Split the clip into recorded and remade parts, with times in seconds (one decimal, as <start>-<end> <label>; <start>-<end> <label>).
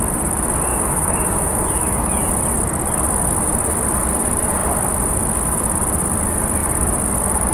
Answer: 0.0-0.7 recorded; 0.7-2.3 remade; 2.3-7.5 recorded